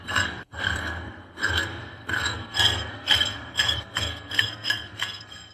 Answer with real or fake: fake